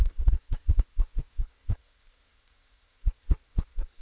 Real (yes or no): no